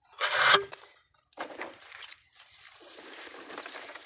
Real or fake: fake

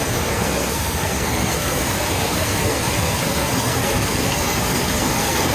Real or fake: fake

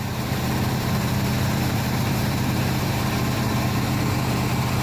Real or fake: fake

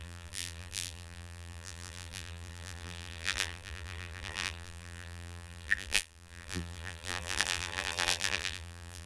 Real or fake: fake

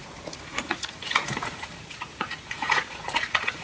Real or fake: fake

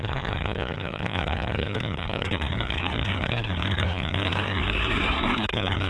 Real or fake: fake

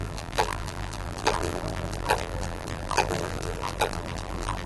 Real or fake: fake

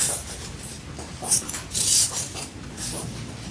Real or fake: real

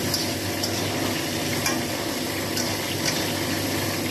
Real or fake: real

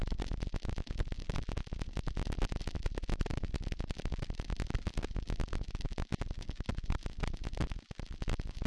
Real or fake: real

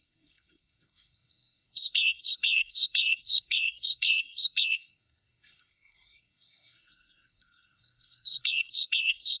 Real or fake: fake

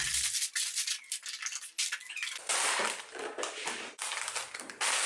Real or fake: real